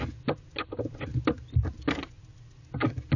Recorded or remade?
recorded